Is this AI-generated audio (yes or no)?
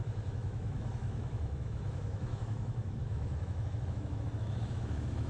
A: yes